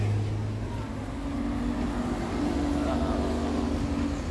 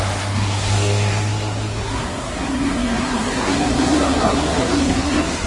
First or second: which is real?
first